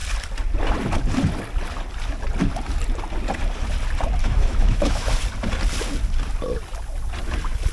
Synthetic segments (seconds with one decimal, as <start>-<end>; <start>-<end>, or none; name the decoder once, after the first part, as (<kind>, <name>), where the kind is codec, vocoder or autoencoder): 4.2-5.1 (autoencoder, DAC-VAE)